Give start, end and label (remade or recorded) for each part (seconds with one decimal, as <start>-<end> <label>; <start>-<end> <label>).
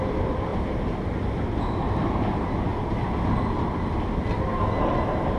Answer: 0.0-0.5 recorded; 0.5-1.6 remade; 1.6-5.4 recorded